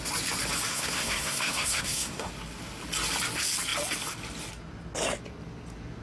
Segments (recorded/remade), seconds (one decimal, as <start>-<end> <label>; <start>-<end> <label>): 0.0-0.7 recorded; 0.7-2.3 remade; 2.3-6.0 recorded